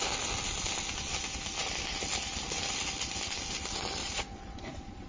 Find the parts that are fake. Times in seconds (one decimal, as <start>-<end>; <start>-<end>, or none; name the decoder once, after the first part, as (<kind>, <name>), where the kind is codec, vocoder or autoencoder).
4.0-5.1 (vocoder, Vocos)